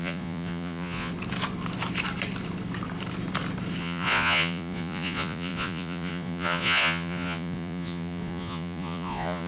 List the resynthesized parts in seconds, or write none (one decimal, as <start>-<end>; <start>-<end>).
0.0-1.1; 3.8-9.5